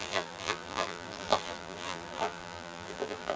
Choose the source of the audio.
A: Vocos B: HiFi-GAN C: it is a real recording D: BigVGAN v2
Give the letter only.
D